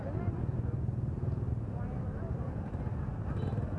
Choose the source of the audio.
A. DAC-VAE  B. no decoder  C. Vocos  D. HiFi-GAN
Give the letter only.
B